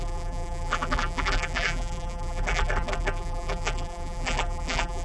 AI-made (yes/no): yes